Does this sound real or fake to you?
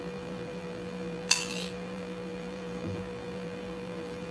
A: fake